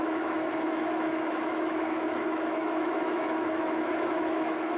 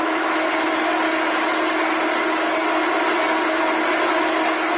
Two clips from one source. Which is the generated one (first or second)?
first